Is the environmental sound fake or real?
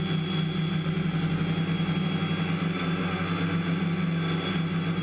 real